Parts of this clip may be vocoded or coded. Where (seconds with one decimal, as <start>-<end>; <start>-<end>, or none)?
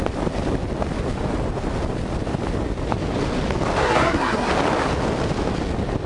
3.8-4.5